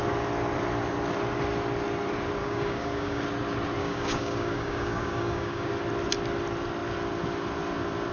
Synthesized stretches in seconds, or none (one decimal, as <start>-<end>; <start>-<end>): 2.4-3.2; 3.8-5.7